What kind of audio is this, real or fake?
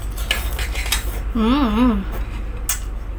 real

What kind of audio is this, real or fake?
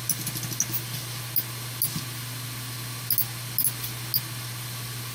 real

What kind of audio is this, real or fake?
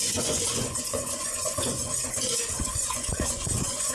fake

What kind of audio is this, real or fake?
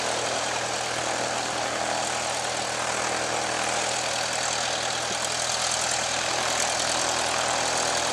real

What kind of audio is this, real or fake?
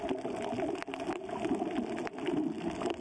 real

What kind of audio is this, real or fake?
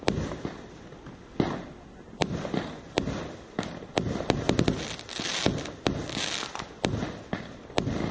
real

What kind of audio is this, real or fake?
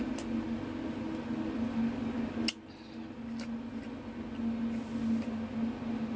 real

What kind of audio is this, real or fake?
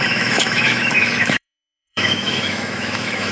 fake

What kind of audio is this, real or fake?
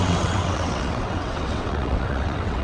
fake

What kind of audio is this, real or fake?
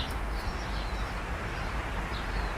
real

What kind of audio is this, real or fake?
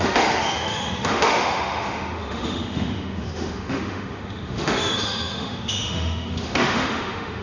fake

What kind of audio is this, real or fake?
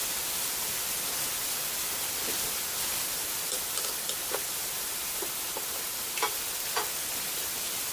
fake